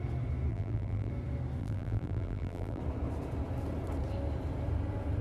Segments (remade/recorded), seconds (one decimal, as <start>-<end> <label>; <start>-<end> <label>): 0.0-0.5 recorded; 0.5-1.1 remade; 1.1-1.6 recorded; 1.6-2.8 remade; 2.8-5.2 recorded